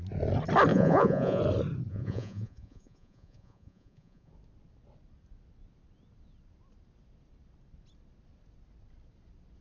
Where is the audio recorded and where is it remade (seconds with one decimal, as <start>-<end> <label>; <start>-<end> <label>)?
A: 0.0-0.7 recorded; 0.7-1.4 remade; 1.4-1.9 recorded; 1.9-4.3 remade; 4.3-9.6 recorded